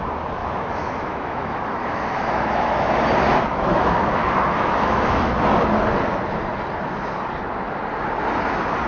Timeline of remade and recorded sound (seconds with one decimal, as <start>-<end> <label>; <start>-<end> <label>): 0.0-0.4 recorded; 0.4-2.9 remade; 2.9-3.5 recorded; 3.5-5.3 remade; 5.3-8.9 recorded